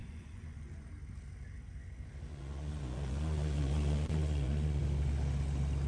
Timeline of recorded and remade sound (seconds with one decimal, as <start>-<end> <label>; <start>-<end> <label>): 0.0-0.9 remade; 0.9-2.3 recorded; 2.3-4.8 remade; 4.8-5.9 recorded